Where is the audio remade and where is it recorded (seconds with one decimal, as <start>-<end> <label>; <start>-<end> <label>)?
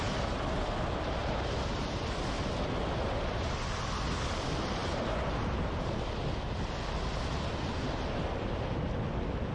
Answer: 0.0-9.5 recorded